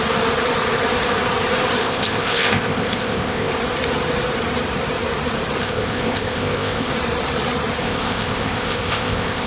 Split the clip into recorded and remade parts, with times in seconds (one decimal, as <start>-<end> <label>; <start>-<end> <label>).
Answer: 0.0-1.8 recorded; 1.8-3.5 remade; 3.5-5.6 recorded; 5.6-6.9 remade; 6.9-7.8 recorded; 7.8-9.5 remade